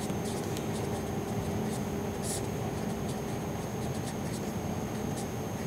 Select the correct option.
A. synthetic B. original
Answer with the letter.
B